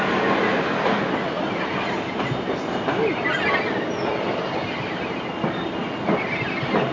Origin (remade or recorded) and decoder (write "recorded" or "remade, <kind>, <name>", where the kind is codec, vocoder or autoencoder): recorded